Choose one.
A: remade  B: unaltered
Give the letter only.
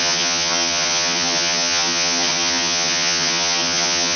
A